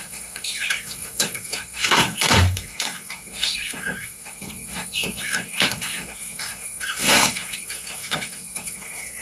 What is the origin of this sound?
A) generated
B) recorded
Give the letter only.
A